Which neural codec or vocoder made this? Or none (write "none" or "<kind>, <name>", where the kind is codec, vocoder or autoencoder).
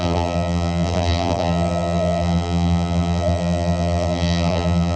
vocoder, BigVGAN v2